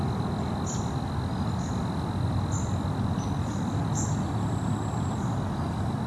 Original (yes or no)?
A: yes